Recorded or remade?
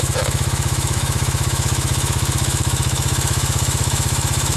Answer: remade